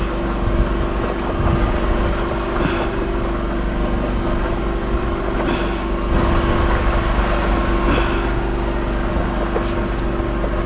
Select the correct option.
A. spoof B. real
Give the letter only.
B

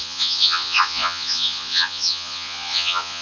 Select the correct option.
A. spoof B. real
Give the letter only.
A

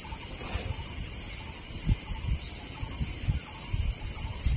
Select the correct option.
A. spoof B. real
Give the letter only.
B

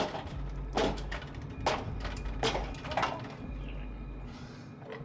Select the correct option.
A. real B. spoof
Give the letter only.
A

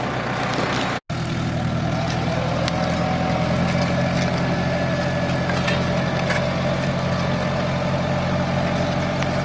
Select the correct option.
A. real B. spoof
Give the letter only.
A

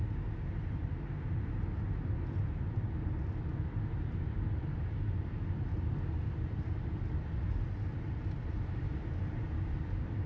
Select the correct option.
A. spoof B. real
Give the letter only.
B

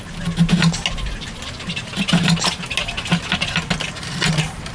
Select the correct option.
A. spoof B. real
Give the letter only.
B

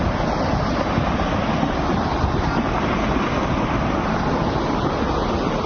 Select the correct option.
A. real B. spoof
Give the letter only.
A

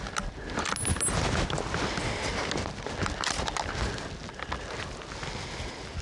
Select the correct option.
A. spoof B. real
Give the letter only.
B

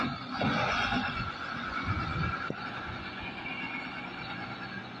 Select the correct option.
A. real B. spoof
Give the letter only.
B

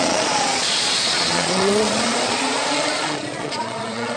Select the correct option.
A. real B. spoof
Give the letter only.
B